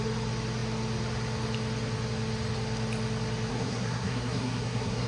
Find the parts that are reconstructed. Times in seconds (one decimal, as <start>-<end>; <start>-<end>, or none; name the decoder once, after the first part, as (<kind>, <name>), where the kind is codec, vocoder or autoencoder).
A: 3.5-5.1 (codec, SNAC)